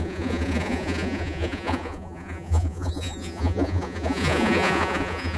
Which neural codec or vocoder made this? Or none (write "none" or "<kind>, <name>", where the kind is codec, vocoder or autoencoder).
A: vocoder, Vocos